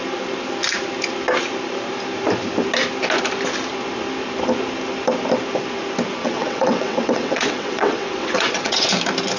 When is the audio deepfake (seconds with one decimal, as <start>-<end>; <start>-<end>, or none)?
6.2-8.9